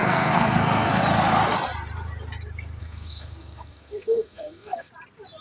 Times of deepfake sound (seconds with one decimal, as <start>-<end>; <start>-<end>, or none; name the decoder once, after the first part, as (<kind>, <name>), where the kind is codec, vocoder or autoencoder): 0.0-1.0 (codec, SNAC); 2.8-4.9